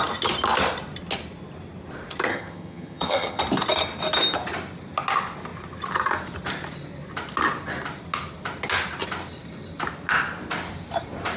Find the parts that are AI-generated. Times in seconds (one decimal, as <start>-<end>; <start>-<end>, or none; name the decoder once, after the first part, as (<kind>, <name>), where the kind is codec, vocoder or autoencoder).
2.3-3.4 (vocoder, HiFi-GAN)